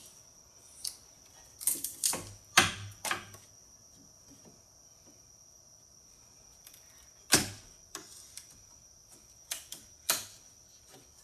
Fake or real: real